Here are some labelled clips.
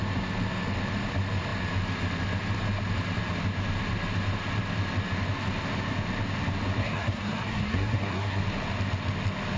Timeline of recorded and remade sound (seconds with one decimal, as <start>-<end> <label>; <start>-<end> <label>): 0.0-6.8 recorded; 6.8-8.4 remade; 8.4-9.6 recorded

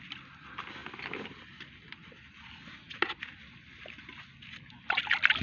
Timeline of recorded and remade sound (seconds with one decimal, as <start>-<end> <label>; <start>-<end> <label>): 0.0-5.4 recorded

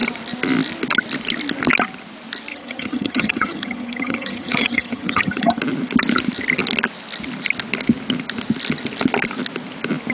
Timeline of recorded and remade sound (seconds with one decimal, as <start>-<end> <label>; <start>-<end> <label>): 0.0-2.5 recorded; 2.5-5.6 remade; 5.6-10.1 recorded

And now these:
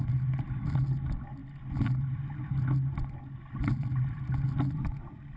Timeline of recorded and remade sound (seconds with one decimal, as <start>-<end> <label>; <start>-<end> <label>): 0.0-5.4 recorded

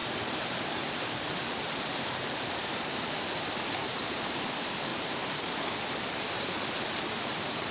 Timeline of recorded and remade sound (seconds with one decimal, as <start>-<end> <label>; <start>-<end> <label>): 0.0-7.7 remade

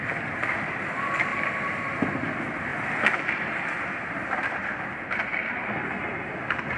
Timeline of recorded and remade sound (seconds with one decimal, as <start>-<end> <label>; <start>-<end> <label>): 0.0-6.8 recorded

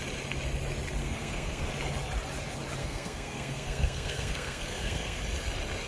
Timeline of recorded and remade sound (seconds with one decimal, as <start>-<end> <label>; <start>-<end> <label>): 0.0-1.0 recorded; 1.0-1.6 remade; 1.6-2.8 recorded; 2.8-5.2 remade; 5.2-5.9 recorded

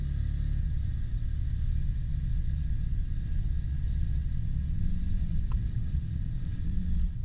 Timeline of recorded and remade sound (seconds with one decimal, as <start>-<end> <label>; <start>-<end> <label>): 0.0-0.6 recorded; 0.6-7.2 remade